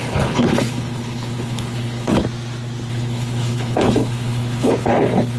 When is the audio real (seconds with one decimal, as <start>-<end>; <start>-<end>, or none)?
2.2-2.9